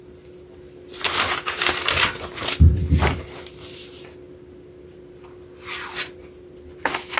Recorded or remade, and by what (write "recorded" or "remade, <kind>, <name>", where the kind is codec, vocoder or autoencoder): recorded